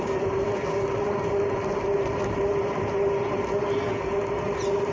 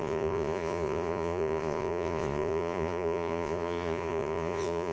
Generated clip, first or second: second